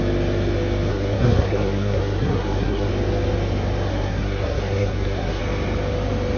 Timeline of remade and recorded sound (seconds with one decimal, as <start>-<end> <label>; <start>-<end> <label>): 0.0-0.9 recorded; 0.9-2.9 remade; 2.9-3.9 recorded; 3.9-5.4 remade; 5.4-6.4 recorded